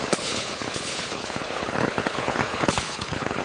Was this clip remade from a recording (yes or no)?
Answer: yes